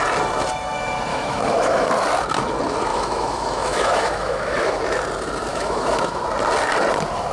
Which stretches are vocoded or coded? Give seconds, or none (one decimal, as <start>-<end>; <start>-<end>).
1.1-1.9; 2.9-4.8; 5.5-6.2